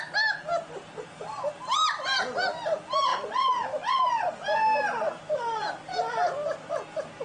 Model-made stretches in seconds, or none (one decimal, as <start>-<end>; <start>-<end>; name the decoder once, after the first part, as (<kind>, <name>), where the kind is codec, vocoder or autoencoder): none